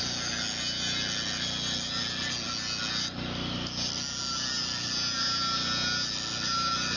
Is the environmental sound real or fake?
real